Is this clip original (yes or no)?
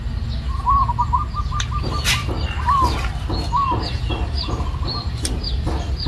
yes